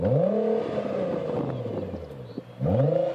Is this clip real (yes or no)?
yes